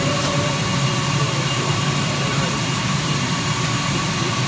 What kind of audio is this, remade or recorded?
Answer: remade